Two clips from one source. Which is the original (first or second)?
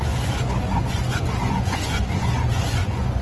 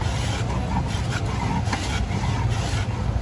second